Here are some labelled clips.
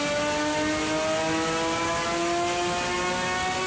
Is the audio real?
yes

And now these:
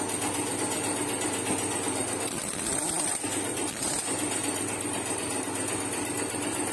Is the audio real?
yes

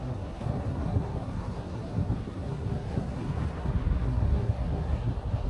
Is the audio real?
no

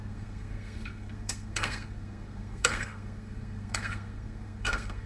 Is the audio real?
no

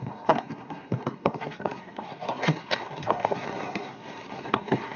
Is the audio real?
no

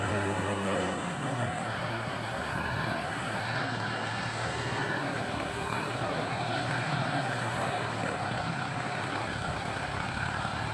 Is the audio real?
no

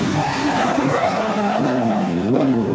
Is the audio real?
no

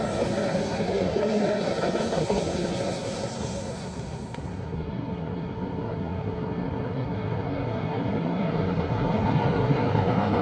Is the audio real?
no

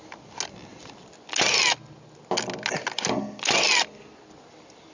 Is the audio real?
yes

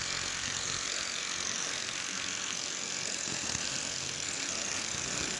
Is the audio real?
no